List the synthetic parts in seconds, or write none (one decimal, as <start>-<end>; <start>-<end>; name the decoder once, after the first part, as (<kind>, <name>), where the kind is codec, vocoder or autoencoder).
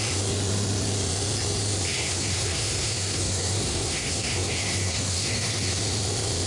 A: 1.9-5.8 (codec, SNAC)